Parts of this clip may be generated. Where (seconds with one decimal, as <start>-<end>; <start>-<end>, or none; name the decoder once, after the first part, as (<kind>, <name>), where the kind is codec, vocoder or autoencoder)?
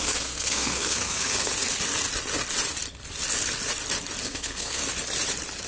0.0-1.5 (codec, SNAC); 4.2-4.8